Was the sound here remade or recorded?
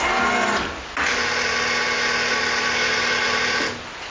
recorded